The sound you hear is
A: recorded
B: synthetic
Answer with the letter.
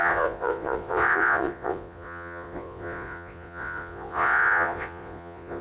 B